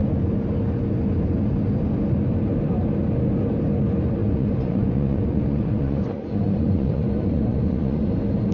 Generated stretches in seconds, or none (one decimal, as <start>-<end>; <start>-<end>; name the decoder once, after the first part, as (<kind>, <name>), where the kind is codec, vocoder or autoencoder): 4.2-8.1 (vocoder, Vocos)